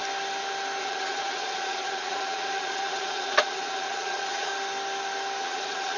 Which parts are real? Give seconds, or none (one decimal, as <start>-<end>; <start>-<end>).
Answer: 0.0-0.8; 4.5-5.4